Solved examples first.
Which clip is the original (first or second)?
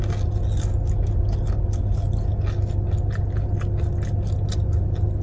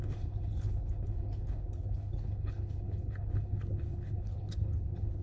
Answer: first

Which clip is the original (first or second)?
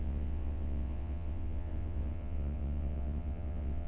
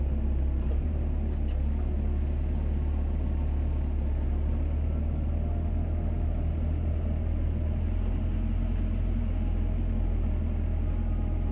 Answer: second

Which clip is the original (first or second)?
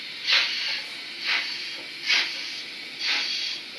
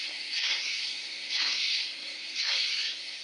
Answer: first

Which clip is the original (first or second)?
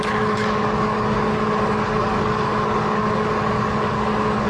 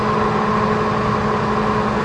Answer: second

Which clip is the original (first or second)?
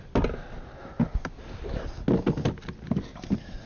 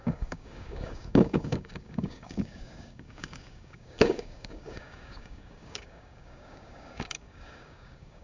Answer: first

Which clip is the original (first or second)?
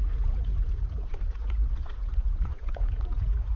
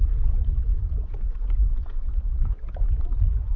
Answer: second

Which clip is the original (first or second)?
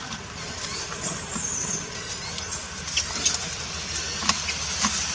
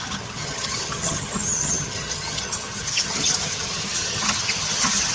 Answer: first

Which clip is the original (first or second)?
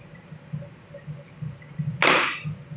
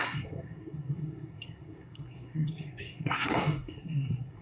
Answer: first